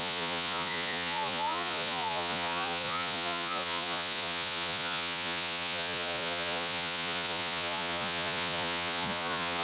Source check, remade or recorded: remade